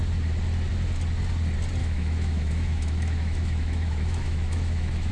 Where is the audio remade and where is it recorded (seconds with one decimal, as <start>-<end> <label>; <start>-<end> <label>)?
0.0-1.8 recorded; 1.8-5.1 remade

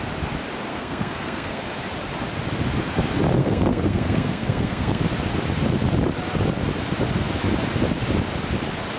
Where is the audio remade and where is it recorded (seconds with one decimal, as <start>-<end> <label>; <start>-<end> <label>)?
0.0-0.7 recorded; 0.7-1.6 remade; 1.6-3.4 recorded; 3.4-5.0 remade; 5.0-9.0 recorded